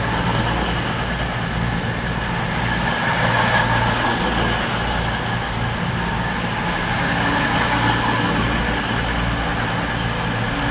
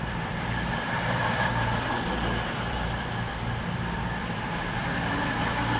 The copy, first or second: second